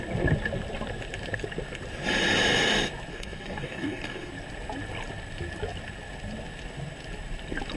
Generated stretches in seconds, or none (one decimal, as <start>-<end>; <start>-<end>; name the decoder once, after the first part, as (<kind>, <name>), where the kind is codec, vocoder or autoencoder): 3.1-4.3 (codec, DAC)